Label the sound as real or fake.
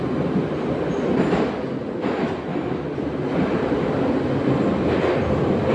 real